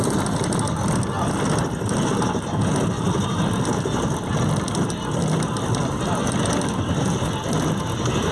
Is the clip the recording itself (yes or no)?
yes